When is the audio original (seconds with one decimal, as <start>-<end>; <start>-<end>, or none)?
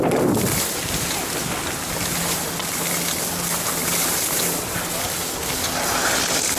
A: 0.0-3.8; 4.4-6.6